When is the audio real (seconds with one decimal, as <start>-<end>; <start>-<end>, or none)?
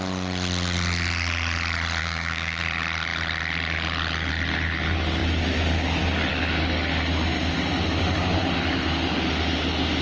0.0-2.0; 2.6-10.0